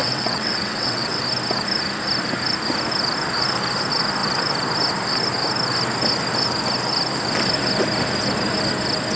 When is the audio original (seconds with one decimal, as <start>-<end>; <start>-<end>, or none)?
1.2-9.2